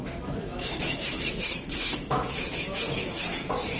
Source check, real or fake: fake